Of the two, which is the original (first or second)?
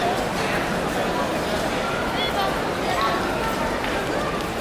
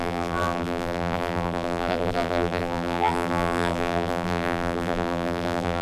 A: first